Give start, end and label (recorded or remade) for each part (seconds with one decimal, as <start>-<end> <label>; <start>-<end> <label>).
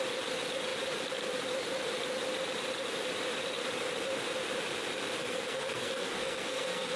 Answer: 0.0-5.2 recorded; 5.2-7.0 remade